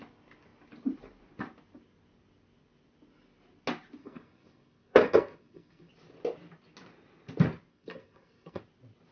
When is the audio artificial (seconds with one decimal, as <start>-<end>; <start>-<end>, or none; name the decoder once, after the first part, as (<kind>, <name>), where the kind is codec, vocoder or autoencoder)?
4.0-5.9 (codec, SNAC); 7.7-8.6